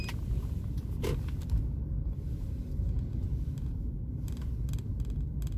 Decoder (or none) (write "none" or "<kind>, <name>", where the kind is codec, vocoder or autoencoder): none